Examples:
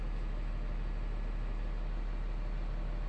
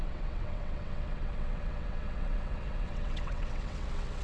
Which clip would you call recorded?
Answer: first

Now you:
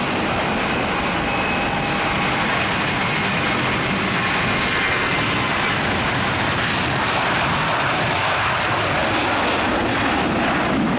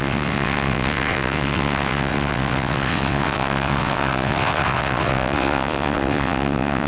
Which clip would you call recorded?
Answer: first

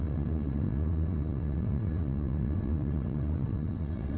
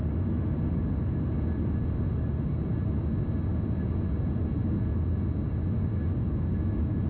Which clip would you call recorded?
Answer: second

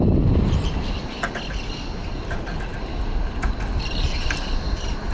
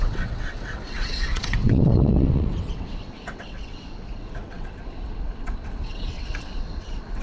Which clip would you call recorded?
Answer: first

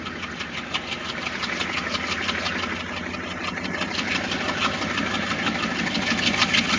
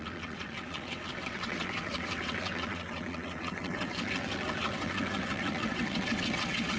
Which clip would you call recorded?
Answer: first